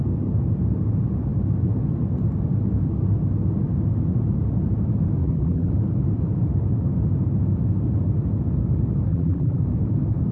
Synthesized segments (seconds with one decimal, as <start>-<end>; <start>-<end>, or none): 5.2-5.7; 9.1-9.6